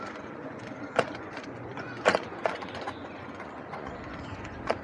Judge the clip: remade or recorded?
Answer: remade